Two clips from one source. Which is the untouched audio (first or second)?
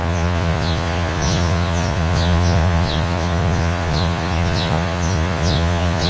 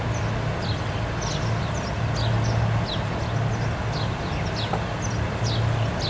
second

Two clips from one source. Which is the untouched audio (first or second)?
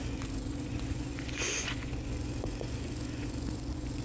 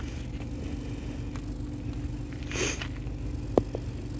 second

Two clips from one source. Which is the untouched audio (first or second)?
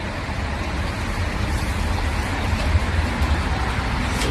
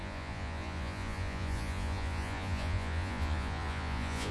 first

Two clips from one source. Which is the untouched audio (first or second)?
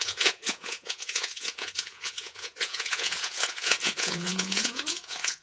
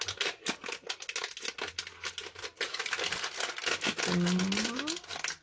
second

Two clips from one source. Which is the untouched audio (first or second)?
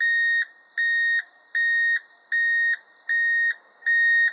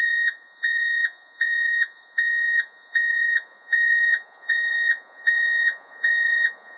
first